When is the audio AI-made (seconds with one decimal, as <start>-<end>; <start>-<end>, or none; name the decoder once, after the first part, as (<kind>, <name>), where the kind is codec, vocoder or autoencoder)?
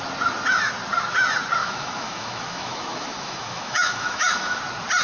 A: 1.6-4.6 (autoencoder, DAC-VAE)